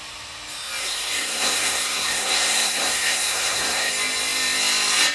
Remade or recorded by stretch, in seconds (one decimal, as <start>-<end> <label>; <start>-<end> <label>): 0.0-0.8 recorded; 0.8-3.9 remade; 3.9-5.1 recorded